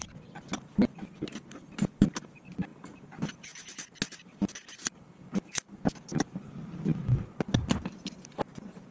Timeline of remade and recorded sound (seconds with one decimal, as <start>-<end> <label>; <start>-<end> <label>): 0.0-8.9 recorded